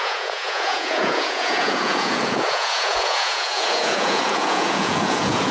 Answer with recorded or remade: remade